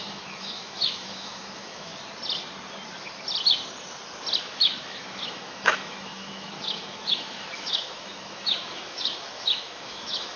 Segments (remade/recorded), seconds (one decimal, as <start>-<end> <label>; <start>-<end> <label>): 0.0-1.9 remade; 1.9-4.4 recorded; 4.4-10.4 remade